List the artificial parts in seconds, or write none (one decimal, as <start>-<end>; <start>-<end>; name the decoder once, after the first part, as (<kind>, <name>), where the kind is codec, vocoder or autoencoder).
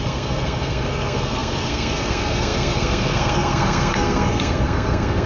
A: 0.0-5.3 (codec, SNAC)